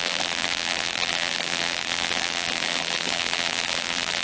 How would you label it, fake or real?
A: fake